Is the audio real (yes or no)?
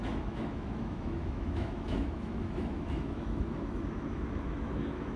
no